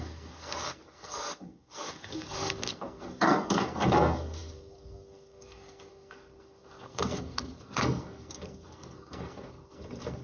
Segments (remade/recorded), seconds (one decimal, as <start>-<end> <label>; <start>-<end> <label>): 0.0-10.2 remade